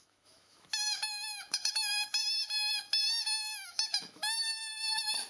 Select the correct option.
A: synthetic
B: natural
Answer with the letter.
A